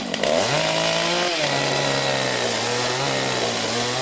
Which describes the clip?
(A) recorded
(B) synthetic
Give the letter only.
A